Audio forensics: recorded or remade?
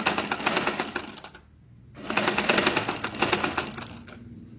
recorded